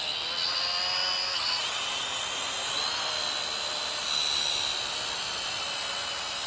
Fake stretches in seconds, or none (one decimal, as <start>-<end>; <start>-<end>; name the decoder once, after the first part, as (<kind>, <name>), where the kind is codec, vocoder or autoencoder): none

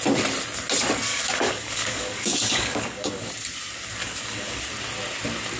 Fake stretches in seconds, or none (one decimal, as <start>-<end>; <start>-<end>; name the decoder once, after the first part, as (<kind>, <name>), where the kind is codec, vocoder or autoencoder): 1.1-3.3 (codec, DAC); 4.0-4.6